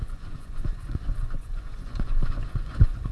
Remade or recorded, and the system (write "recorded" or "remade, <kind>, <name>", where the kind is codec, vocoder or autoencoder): remade, vocoder, Vocos